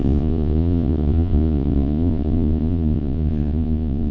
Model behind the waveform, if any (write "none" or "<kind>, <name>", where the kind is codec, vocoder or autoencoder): vocoder, Vocos